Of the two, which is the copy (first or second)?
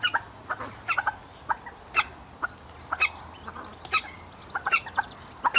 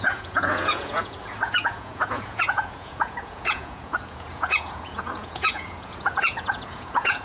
second